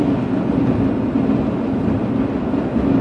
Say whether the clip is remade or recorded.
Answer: recorded